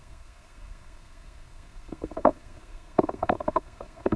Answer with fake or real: fake